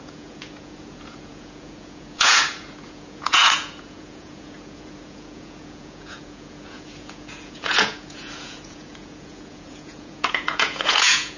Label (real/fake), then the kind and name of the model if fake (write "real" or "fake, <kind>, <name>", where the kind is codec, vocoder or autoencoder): fake, vocoder, Vocos